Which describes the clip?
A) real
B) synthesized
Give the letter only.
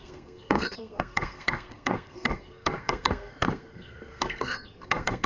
B